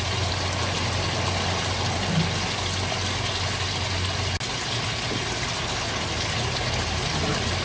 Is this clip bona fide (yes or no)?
yes